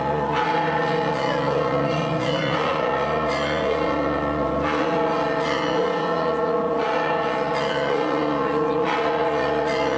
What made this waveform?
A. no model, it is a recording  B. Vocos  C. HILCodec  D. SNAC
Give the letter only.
B